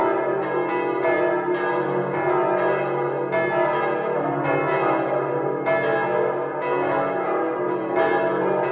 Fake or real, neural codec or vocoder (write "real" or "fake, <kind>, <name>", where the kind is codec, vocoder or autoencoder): real